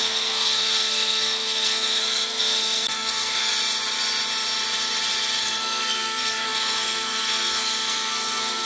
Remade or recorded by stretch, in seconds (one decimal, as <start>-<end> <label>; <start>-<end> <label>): 0.0-3.5 remade; 3.5-5.4 recorded; 5.4-8.7 remade

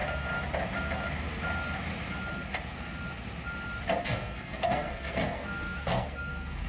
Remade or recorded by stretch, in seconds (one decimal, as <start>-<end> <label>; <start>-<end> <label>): 0.0-4.0 recorded; 4.0-6.7 remade

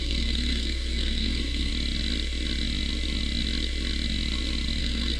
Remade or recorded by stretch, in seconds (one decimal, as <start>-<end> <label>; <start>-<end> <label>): 0.0-1.7 remade; 1.7-4.8 recorded; 4.8-5.2 remade